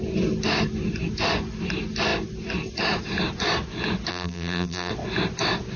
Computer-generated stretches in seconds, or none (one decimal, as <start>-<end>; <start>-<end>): 4.1-4.9